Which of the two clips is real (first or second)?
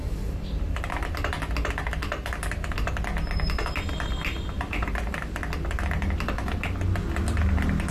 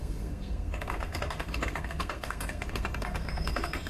first